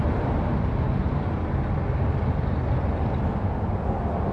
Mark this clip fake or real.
real